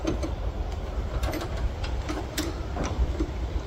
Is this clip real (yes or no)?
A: no